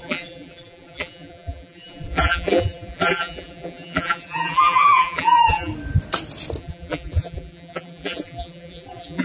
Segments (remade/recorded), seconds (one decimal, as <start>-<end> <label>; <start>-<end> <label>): 0.0-5.7 remade; 5.7-6.6 recorded; 6.6-9.2 remade